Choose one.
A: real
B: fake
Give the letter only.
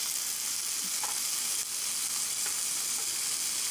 A